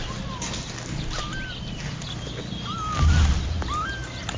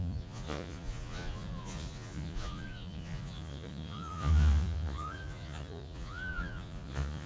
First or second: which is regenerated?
second